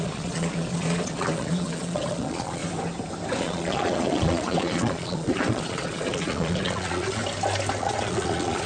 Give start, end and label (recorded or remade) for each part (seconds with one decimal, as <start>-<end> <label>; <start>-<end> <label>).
0.0-2.6 remade; 2.6-3.4 recorded; 3.4-7.2 remade; 7.2-7.8 recorded; 7.8-8.7 remade